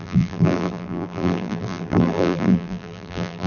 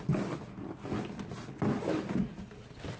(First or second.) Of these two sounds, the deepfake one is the first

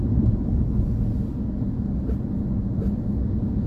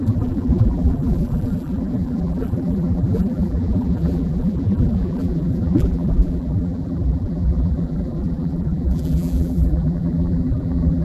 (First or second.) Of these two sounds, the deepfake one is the second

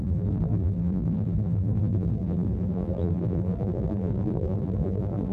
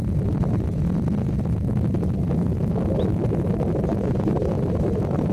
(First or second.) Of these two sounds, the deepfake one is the first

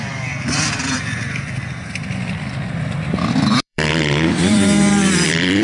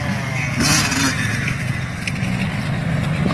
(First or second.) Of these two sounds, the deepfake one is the first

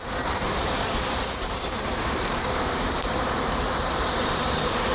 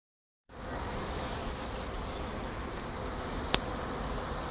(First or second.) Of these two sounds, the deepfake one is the first